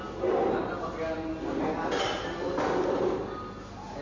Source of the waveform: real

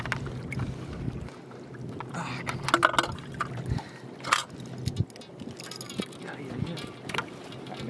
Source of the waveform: real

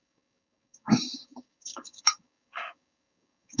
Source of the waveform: fake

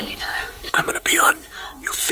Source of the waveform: fake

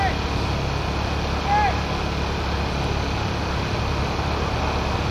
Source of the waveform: real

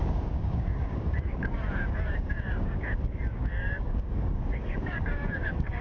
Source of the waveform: fake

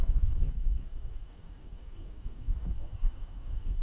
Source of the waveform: fake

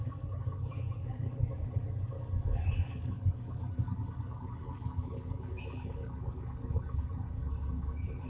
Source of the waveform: fake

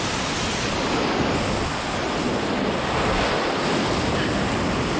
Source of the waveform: real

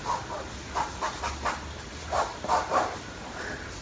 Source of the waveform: real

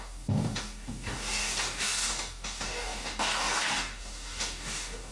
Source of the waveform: fake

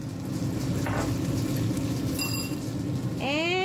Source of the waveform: real